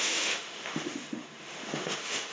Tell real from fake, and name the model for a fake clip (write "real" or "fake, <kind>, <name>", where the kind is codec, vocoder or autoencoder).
fake, autoencoder, DAC-VAE